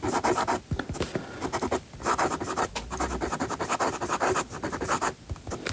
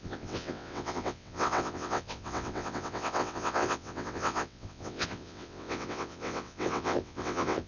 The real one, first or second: first